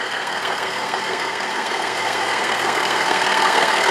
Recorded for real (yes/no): no